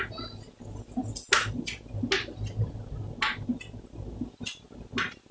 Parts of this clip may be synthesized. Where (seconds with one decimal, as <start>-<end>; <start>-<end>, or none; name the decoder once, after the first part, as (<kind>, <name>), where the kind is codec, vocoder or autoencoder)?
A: none